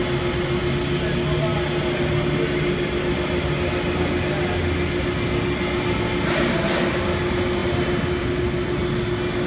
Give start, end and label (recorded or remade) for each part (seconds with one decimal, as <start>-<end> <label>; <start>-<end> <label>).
0.0-9.5 recorded